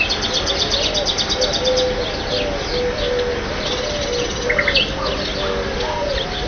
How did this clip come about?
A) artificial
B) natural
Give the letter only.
B